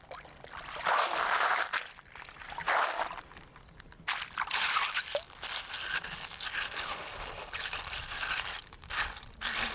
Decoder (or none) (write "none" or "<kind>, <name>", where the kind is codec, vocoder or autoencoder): none